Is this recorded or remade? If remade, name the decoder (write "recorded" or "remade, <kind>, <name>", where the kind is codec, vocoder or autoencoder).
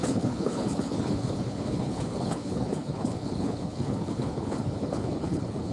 remade, codec, HILCodec